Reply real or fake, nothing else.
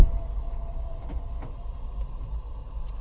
real